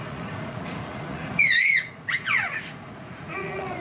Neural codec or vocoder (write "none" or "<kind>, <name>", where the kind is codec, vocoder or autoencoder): vocoder, Vocos